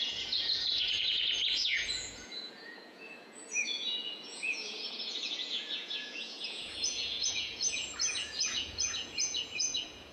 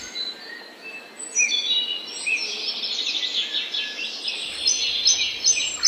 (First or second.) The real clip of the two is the second